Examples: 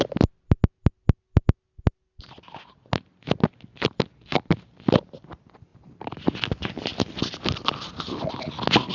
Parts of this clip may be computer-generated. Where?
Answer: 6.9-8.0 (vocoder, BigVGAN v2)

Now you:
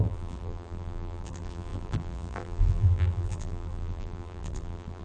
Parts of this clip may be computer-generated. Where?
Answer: 0.0-5.0 (vocoder, BigVGAN v2)